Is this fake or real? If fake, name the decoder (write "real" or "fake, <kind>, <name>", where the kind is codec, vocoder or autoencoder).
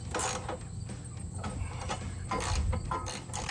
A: real